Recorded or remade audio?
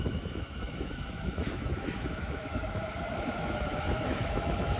remade